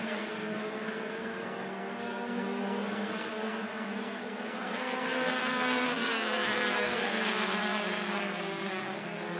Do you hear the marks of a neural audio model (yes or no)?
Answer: yes